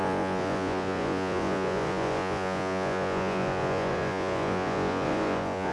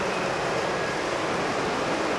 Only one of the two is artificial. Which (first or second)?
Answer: first